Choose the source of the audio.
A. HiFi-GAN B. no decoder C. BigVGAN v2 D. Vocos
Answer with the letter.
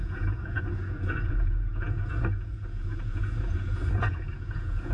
D